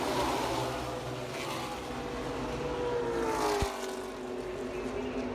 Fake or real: real